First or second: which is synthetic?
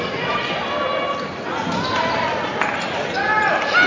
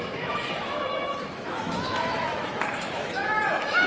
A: second